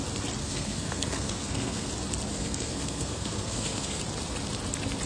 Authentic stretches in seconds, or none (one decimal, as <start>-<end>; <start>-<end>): 0.0-0.4; 1.9-2.3; 4.0-5.1